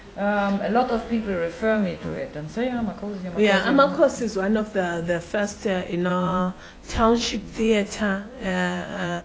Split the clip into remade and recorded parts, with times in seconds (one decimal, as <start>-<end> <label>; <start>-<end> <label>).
0.0-0.9 recorded; 0.9-2.2 remade; 2.2-6.1 recorded; 6.1-9.2 remade